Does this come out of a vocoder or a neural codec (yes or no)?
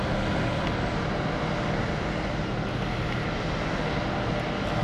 no